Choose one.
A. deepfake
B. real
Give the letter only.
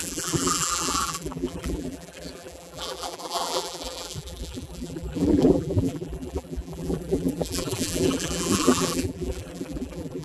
A